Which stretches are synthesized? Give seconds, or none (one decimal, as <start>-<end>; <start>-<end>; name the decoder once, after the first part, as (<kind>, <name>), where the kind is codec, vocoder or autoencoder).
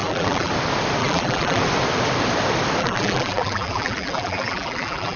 0.0-0.5 (vocoder, BigVGAN v2); 1.0-1.6; 2.8-5.2